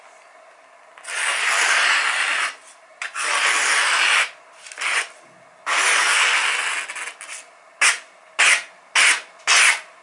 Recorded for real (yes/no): yes